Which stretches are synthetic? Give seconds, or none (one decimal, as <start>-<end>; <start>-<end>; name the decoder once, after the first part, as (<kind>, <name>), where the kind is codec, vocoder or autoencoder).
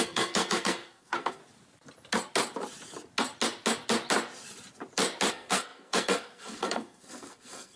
0.0-1.4 (codec, SNAC); 5.3-7.8